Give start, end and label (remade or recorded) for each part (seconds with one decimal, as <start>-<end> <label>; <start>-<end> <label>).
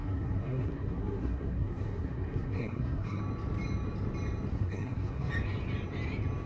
0.0-3.2 remade; 3.2-4.5 recorded; 4.5-5.3 remade; 5.3-6.5 recorded